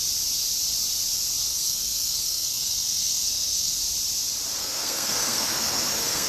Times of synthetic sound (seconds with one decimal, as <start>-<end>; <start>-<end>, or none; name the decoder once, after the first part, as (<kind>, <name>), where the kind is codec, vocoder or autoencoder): 1.5-3.8 (codec, SNAC); 4.6-6.3